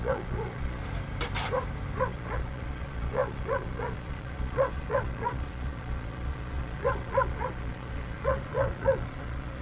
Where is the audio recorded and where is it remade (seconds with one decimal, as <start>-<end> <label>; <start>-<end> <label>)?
0.0-0.8 remade; 0.8-2.0 recorded; 2.0-9.6 remade